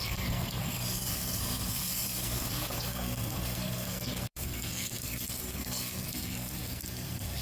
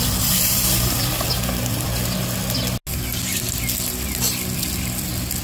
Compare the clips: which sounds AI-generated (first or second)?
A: first